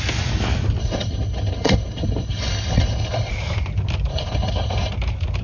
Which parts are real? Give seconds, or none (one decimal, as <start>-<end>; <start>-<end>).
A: 0.0-0.8; 3.3-4.1; 4.9-5.4